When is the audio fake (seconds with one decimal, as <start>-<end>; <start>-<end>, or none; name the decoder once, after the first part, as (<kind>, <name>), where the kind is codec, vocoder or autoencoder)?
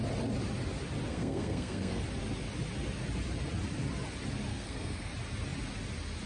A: 1.1-2.0 (codec, SNAC); 4.5-5.1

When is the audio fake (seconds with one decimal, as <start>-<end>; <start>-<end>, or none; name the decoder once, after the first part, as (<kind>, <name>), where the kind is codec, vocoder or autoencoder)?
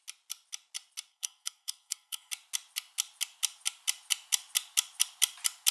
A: 1.1-2.3 (codec, SNAC)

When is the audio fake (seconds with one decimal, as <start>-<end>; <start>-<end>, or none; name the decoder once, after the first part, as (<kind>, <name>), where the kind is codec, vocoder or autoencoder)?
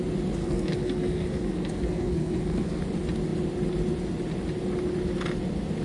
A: 0.4-2.8 (codec, SNAC)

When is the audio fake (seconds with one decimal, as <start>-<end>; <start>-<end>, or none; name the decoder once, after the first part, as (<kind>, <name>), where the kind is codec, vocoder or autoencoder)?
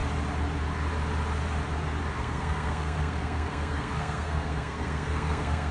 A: 2.2-5.7 (codec, SNAC)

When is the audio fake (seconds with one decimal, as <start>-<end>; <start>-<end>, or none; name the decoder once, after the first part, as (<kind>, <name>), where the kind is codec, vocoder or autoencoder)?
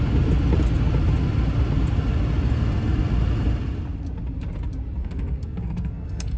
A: 5.0-6.4 (codec, SNAC)